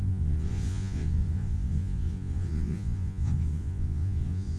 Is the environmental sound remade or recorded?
remade